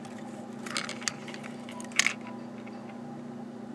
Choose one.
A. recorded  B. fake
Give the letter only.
A